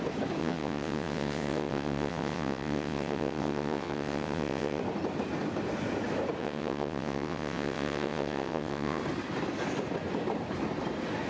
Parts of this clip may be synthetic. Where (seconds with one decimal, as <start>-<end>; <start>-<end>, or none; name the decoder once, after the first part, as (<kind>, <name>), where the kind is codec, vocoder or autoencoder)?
0.4-4.8 (vocoder, WaveNeXt); 6.4-9.0